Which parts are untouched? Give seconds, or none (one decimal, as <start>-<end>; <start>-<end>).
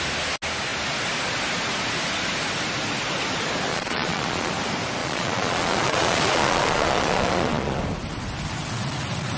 0.0-3.7; 4.5-5.0; 7.8-9.4